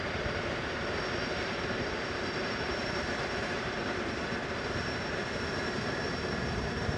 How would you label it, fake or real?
fake